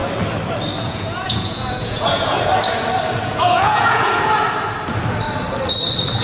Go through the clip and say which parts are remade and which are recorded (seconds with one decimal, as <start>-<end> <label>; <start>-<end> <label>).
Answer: 0.0-0.8 recorded; 0.8-2.5 remade; 2.5-3.2 recorded; 3.2-4.1 remade; 4.1-6.2 recorded